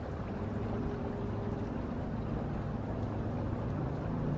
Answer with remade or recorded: recorded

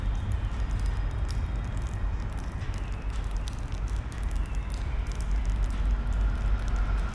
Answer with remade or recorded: recorded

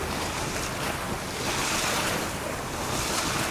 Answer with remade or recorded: recorded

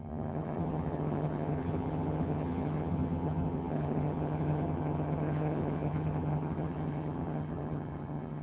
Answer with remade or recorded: remade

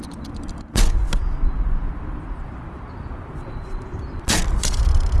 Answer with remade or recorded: remade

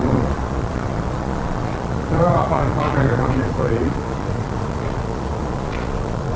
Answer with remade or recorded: remade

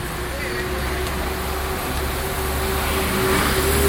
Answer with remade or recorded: recorded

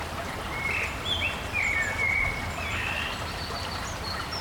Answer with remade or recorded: recorded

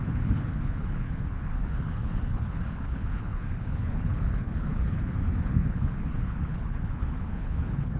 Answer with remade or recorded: remade